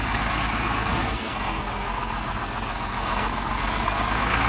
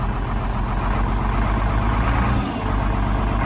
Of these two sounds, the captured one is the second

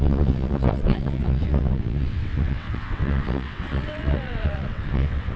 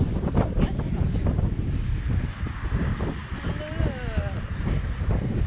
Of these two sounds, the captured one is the second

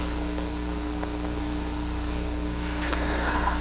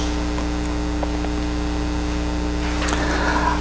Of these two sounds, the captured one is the second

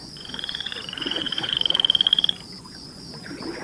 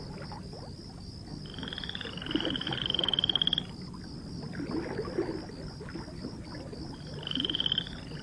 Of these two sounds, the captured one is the second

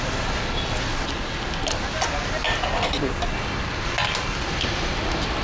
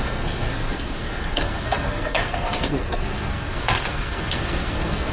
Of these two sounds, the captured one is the first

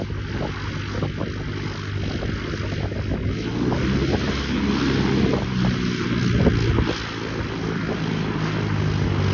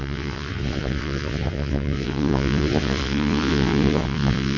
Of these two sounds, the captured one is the first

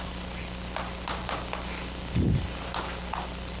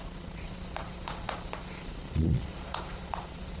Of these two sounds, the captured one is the first